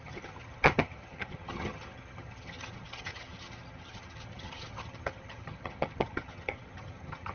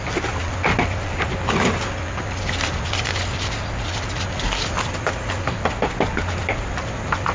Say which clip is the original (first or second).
second